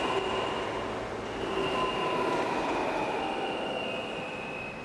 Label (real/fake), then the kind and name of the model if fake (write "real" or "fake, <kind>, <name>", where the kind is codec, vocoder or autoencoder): real